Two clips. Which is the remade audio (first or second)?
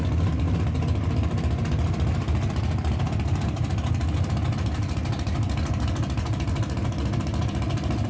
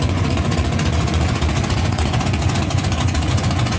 second